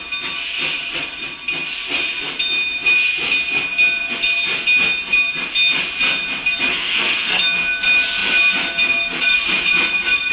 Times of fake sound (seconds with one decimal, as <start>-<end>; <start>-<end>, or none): 6.7-7.4